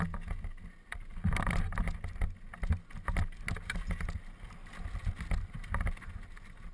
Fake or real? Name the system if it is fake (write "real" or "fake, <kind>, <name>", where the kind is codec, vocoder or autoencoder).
real